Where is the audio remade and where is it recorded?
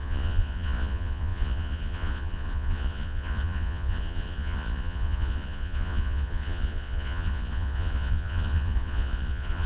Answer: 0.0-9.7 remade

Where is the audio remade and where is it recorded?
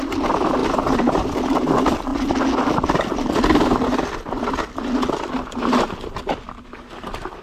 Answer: 0.0-0.6 remade; 0.6-1.1 recorded; 1.1-2.1 remade; 2.1-5.2 recorded; 5.2-7.4 remade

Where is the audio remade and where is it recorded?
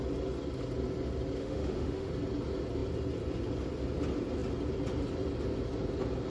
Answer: 0.0-1.4 recorded; 1.4-2.1 remade; 2.1-6.3 recorded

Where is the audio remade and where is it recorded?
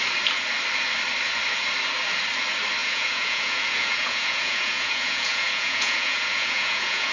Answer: 0.0-2.8 recorded; 2.8-7.1 remade